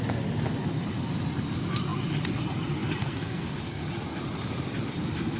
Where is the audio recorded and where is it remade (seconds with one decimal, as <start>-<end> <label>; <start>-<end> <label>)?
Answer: 0.0-3.0 recorded; 3.0-3.8 remade; 3.8-5.4 recorded